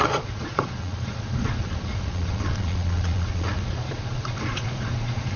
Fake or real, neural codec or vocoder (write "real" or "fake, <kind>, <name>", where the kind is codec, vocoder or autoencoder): fake, vocoder, Vocos